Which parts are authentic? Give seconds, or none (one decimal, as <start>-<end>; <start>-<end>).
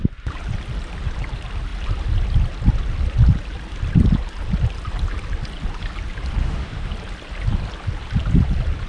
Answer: 0.0-6.4; 6.9-8.9